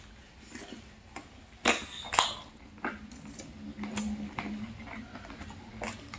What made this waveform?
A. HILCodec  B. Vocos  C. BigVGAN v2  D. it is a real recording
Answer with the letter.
D